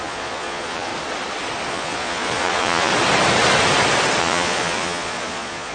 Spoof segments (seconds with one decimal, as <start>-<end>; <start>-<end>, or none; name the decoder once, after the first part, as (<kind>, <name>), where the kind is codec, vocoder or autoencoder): 0.0-0.9 (vocoder, Vocos); 1.7-2.9; 4.2-5.7